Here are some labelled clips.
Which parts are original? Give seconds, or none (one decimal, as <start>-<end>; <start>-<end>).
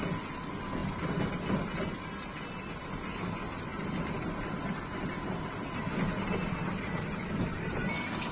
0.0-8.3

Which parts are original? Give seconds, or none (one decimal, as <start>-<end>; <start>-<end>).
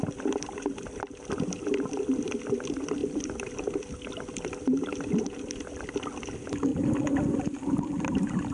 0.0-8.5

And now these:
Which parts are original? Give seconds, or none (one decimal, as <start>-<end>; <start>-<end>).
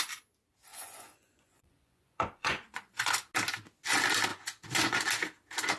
0.0-0.7; 3.1-4.3; 5.0-5.8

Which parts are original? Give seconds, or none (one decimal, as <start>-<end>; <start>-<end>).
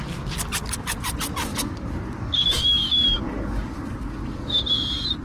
0.0-1.5; 4.6-5.2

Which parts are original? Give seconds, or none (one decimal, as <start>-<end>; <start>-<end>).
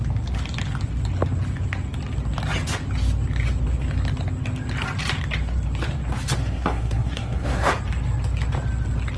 0.0-6.4; 7.8-9.2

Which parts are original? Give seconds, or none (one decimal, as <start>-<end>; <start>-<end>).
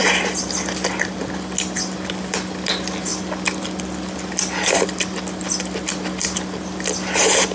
0.0-7.5